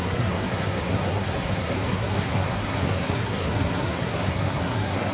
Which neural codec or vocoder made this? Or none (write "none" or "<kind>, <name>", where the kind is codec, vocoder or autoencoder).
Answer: codec, SNAC